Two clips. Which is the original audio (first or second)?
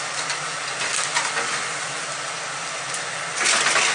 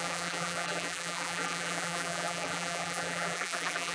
first